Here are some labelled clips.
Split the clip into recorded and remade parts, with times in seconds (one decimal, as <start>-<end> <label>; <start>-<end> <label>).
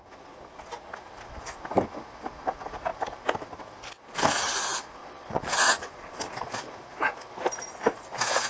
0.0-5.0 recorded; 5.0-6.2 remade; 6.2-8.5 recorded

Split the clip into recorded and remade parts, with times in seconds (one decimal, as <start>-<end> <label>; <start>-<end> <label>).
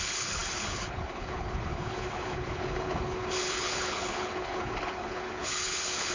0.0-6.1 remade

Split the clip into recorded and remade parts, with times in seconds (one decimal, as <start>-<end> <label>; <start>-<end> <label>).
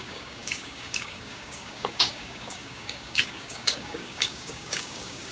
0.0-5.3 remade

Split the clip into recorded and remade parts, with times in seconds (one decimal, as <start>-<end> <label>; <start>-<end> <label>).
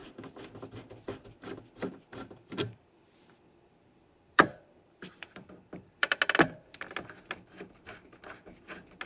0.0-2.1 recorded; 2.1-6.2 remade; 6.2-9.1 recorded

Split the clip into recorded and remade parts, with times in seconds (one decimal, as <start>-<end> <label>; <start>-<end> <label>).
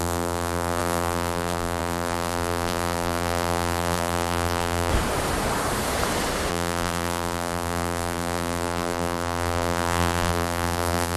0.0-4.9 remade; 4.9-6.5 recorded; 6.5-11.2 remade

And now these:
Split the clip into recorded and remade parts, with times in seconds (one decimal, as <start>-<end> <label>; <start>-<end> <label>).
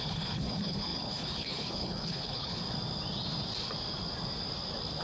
0.0-2.6 remade; 2.6-5.0 recorded